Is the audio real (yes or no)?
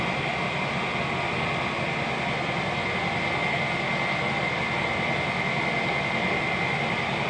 yes